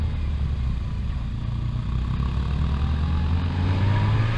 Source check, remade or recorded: recorded